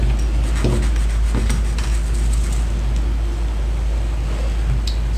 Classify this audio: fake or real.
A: real